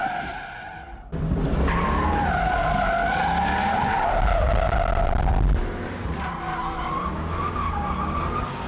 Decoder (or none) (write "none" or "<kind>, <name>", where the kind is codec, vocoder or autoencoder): none